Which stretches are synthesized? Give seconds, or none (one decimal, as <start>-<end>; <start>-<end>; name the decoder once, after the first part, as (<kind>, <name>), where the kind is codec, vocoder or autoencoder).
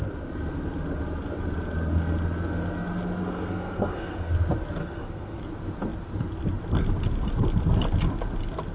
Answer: 3.2-4.3 (codec, SNAC); 4.8-5.4